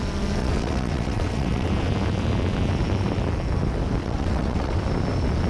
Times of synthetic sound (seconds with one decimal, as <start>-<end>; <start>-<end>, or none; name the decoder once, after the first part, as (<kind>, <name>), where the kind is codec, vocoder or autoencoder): 0.4-1.7 (vocoder, WaveNeXt); 4.0-4.8